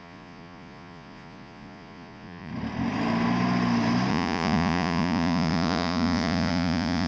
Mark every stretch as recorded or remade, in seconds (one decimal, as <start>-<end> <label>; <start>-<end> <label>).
0.0-2.5 remade; 2.5-4.1 recorded; 4.1-7.1 remade